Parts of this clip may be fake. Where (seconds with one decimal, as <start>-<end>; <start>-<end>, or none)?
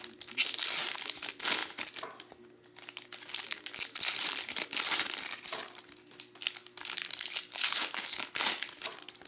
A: none